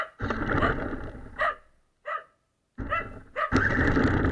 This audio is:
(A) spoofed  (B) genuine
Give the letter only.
B